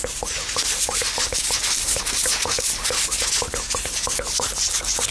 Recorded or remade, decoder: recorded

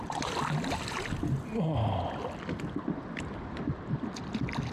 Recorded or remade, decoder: recorded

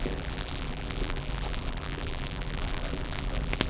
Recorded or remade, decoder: remade, vocoder, BigVGAN v2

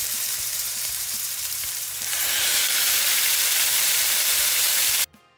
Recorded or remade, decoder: remade, vocoder, BigVGAN v2